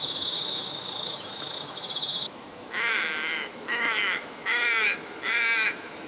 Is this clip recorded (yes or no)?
no